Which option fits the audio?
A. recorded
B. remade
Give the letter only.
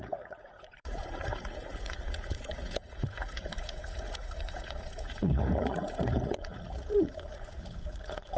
B